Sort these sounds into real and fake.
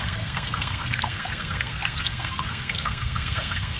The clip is fake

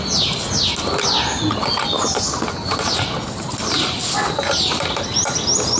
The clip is real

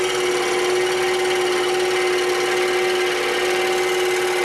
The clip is real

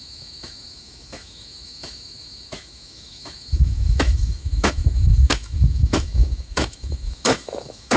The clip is fake